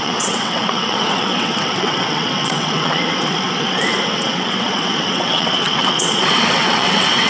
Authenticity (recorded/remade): remade